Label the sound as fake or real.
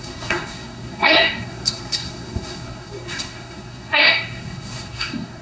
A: fake